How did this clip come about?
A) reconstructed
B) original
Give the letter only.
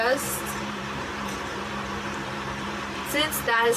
A